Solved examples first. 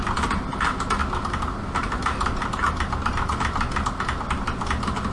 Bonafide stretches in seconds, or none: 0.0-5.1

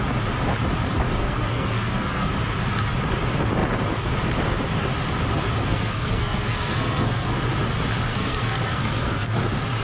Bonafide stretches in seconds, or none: 0.0-1.2; 2.3-5.6; 7.4-8.1; 9.4-9.8

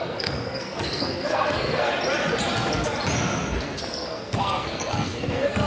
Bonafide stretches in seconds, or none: 1.9-3.5

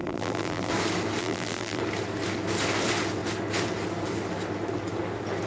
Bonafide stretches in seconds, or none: 0.7-1.2; 1.8-5.5

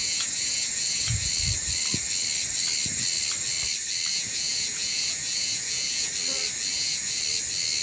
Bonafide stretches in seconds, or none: 1.3-4.1; 6.1-6.7; 7.2-7.8

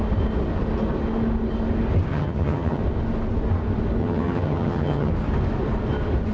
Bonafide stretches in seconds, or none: 0.0-2.1; 2.8-4.0; 5.1-6.3

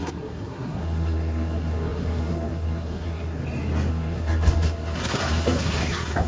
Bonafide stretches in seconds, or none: 3.4-3.9